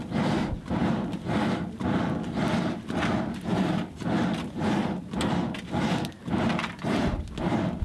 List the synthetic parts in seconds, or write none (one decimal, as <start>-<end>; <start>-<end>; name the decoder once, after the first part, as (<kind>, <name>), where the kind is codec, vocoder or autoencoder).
none